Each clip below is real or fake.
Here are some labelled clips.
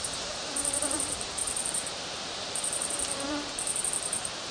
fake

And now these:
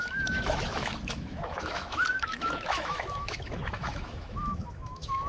fake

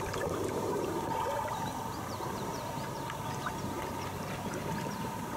fake